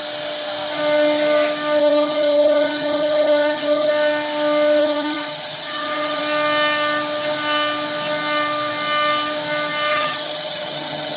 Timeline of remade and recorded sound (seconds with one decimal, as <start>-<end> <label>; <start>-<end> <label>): 0.0-1.8 recorded; 1.8-3.9 remade; 3.9-4.8 recorded; 4.8-6.2 remade; 6.2-9.9 recorded; 9.9-11.2 remade